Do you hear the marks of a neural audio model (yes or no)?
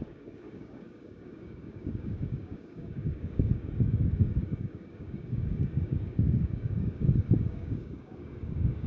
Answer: yes